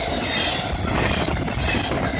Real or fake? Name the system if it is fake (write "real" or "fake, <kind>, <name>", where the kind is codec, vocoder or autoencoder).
real